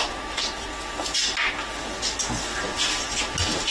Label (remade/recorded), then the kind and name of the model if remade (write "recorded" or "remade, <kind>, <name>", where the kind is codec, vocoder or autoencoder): recorded